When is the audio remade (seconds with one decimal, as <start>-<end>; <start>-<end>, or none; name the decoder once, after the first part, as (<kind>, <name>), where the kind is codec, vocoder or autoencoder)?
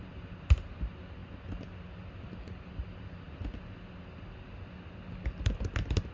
none